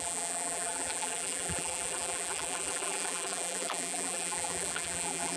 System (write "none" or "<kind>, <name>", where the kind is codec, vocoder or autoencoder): vocoder, BigVGAN v2